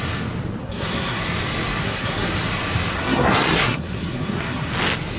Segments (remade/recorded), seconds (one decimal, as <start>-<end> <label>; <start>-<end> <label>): 0.0-0.6 recorded; 0.6-1.2 remade; 1.2-1.8 recorded; 1.8-2.3 remade; 2.3-2.9 recorded; 2.9-4.7 remade; 4.7-5.2 recorded